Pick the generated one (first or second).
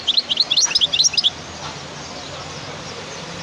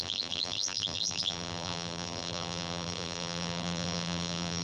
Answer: second